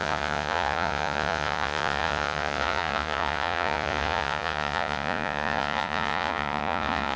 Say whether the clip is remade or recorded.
remade